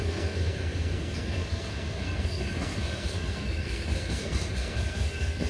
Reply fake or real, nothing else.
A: fake